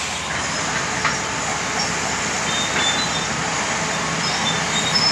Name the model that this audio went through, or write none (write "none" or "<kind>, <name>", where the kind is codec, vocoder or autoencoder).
none